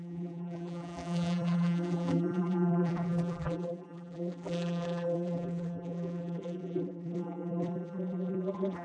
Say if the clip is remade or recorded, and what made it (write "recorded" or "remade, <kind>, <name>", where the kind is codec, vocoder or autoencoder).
remade, vocoder, BigVGAN v2